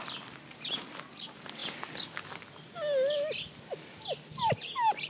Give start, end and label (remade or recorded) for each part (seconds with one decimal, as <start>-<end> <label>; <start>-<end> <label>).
0.0-5.1 recorded